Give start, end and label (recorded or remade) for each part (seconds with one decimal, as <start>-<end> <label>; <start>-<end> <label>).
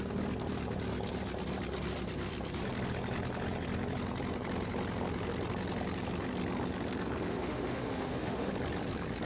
0.0-7.3 recorded; 7.3-8.5 remade; 8.5-9.3 recorded